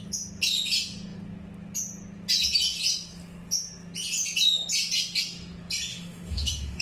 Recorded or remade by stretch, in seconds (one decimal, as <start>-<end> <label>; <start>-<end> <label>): 0.0-5.9 recorded; 5.9-6.8 remade